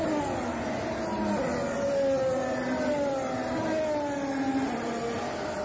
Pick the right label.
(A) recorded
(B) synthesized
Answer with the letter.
A